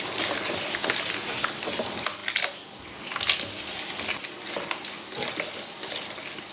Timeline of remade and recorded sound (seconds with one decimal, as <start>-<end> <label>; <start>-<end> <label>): 0.0-6.5 recorded